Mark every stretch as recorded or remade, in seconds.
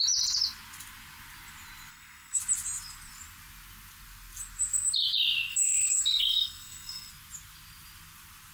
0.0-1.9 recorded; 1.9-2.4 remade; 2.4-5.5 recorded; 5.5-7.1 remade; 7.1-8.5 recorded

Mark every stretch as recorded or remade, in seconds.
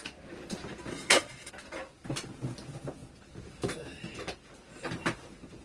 0.0-0.9 recorded; 0.9-1.5 remade; 1.5-5.6 recorded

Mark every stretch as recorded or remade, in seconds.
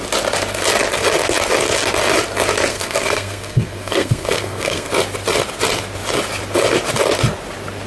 0.0-2.7 recorded; 2.7-4.9 remade; 4.9-7.9 recorded